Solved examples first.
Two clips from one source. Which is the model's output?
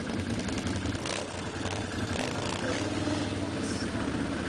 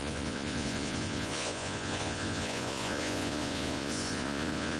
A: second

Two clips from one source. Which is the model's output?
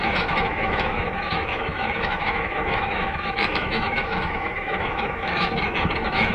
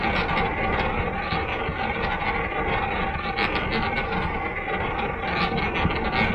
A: first